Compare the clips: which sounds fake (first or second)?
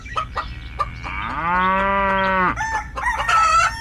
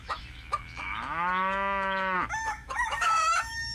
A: second